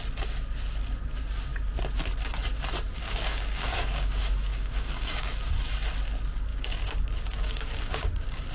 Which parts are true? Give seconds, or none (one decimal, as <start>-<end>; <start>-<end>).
0.0-3.0; 5.3-6.5

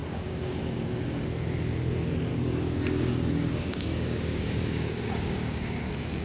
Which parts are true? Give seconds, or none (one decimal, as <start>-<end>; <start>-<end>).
0.6-2.3; 5.8-6.2

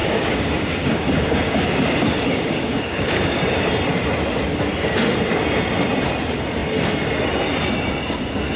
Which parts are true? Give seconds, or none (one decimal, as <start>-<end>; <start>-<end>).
3.4-8.6

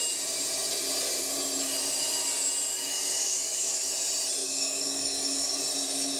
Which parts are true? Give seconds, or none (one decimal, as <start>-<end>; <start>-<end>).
0.0-2.7; 3.9-4.4; 5.6-6.2